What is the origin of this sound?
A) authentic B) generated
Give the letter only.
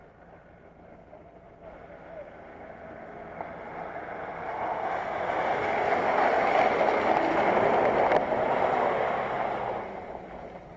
A